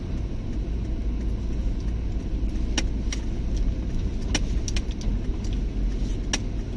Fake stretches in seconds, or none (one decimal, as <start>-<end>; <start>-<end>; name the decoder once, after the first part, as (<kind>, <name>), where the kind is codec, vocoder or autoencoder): none